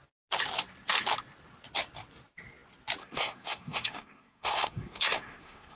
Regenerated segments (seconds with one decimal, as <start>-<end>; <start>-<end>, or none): 3.0-5.8